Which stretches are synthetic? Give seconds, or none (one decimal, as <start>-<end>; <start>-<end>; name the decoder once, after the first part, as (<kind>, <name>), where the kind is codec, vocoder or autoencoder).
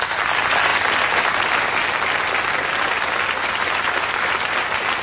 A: none